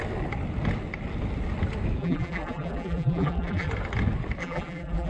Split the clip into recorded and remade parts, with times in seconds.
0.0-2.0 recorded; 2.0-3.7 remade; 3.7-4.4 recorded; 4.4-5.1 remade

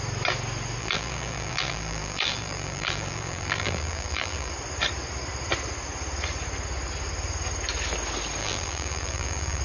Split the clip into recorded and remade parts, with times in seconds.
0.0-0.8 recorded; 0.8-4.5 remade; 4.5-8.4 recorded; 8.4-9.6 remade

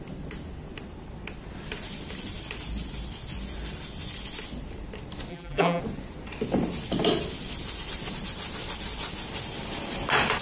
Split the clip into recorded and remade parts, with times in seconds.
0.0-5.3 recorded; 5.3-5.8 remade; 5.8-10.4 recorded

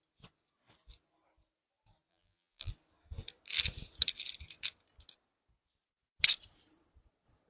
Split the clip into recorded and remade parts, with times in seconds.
0.0-2.1 recorded; 2.1-2.7 remade; 2.7-7.5 recorded